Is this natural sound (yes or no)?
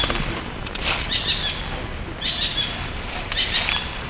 yes